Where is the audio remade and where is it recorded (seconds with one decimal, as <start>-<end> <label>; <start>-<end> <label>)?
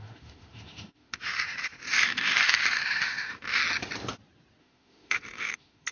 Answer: 0.0-3.6 remade; 3.6-4.6 recorded; 4.6-5.9 remade